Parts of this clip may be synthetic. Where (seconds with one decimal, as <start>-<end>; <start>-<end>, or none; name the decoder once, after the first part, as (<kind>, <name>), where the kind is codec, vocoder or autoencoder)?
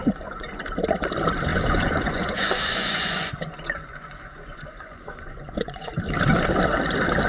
0.0-0.6 (vocoder, Vocos); 1.5-5.9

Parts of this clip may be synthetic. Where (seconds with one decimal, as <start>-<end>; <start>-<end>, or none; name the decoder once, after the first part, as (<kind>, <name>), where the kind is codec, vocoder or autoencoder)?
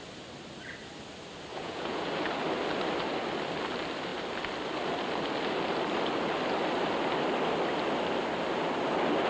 1.5-2.1 (vocoder, Vocos)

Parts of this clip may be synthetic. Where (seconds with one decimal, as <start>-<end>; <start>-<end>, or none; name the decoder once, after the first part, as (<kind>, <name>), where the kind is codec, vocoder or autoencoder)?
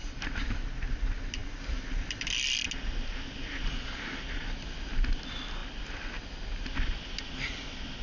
0.0-0.7 (vocoder, BigVGAN v2)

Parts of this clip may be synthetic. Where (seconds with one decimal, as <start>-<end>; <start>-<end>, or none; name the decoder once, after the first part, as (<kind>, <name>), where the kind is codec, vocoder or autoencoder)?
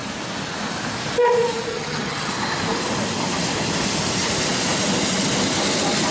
1.7-2.3 (vocoder, HiFi-GAN)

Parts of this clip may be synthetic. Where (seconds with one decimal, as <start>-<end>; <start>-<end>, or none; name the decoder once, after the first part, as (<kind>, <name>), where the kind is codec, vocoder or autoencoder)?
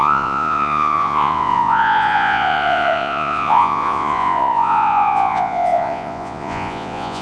0.0-7.2 (vocoder, Vocos)